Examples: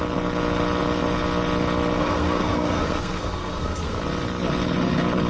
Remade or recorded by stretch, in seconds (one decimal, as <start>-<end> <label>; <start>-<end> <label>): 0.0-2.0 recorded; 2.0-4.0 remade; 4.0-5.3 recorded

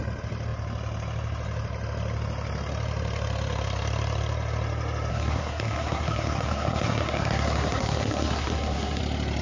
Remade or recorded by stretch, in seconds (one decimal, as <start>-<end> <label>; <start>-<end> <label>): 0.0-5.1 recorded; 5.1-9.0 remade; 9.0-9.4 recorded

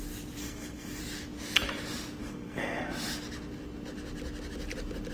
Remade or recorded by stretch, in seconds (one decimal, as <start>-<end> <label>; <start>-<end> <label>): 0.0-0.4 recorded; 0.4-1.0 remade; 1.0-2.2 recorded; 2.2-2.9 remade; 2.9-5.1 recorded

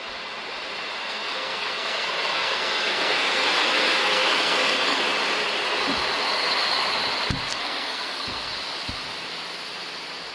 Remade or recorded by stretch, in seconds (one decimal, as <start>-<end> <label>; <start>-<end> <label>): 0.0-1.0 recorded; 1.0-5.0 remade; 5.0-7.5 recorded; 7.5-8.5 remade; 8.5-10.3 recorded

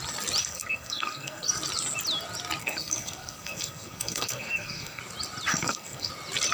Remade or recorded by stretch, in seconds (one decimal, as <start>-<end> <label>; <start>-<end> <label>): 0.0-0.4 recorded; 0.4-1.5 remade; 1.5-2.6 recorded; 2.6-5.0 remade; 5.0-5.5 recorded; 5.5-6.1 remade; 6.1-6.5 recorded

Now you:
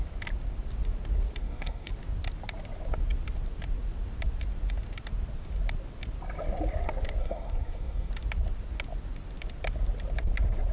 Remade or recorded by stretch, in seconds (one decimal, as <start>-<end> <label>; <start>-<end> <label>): 0.0-1.4 recorded; 1.4-1.9 remade; 1.9-7.2 recorded; 7.2-8.1 remade; 8.1-10.7 recorded

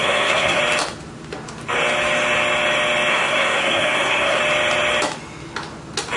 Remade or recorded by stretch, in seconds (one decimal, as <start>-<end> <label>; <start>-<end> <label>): 0.0-0.6 remade; 0.6-3.1 recorded; 3.1-4.4 remade; 4.4-6.2 recorded